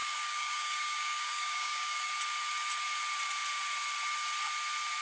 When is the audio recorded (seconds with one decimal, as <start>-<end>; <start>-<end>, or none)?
2.1-5.0